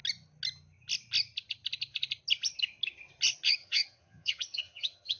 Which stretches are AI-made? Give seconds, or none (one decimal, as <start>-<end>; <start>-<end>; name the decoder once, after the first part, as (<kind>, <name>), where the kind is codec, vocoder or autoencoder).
3.6-5.2 (vocoder, HiFi-GAN)